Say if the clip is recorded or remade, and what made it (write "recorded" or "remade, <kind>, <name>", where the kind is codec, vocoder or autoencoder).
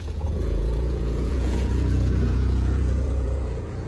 remade, vocoder, Vocos